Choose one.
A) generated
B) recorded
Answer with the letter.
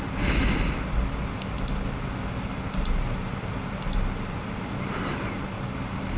B